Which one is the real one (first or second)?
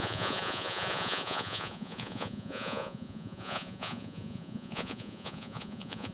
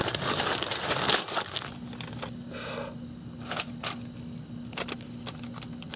second